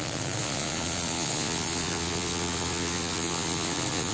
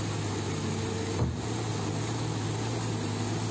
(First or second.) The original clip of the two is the second